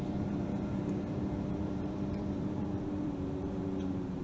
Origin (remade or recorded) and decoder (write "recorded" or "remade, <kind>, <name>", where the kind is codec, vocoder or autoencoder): remade, vocoder, BigVGAN v2